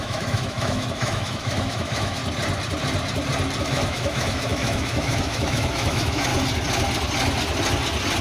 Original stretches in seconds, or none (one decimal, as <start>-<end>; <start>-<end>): 2.2-3.6; 6.3-8.2